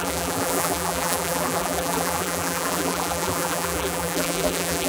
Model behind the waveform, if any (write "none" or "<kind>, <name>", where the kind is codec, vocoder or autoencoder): vocoder, BigVGAN v2